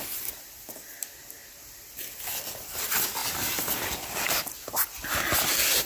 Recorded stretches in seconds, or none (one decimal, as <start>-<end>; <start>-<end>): 0.0-5.9